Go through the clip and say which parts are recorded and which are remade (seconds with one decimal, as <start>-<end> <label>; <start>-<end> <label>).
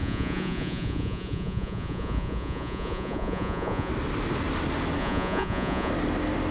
0.0-3.9 remade; 3.9-5.0 recorded; 5.0-5.9 remade; 5.9-6.5 recorded